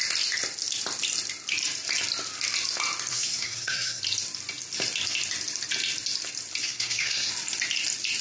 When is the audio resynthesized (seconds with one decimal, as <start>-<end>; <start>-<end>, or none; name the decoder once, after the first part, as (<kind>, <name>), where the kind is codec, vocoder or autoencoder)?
3.1-4.0 (codec, SNAC); 6.6-7.3